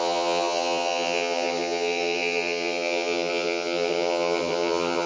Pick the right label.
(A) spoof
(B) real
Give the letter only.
A